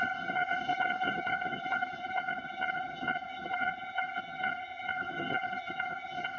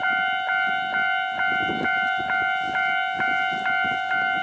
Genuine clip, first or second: second